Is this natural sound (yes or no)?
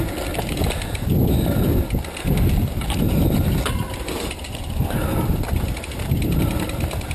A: yes